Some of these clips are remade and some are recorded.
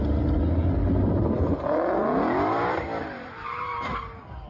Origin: recorded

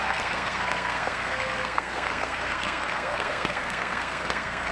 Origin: remade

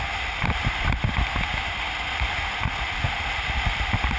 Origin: recorded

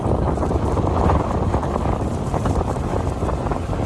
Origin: recorded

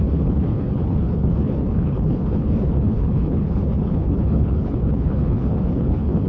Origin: remade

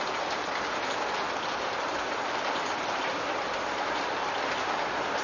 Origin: recorded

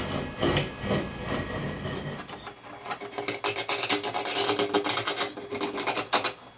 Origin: recorded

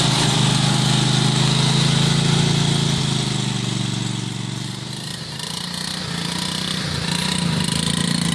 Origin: recorded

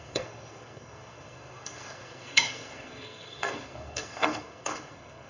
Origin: remade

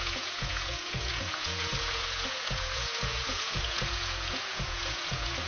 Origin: remade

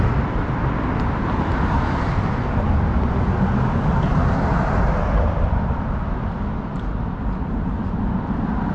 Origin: recorded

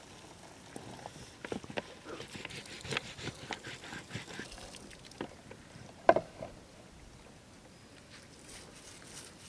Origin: recorded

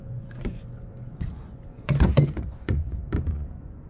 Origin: remade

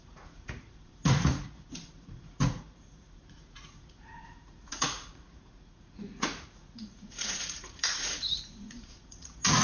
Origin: remade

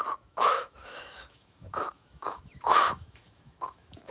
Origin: remade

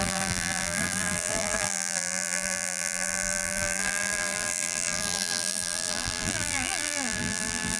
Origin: remade